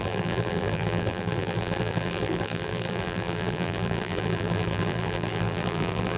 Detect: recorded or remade remade